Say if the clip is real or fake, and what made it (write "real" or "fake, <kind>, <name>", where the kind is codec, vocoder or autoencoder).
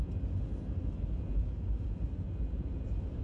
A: real